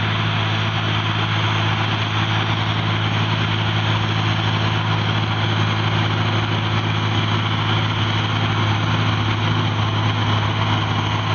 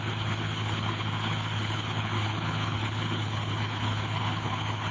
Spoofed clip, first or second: second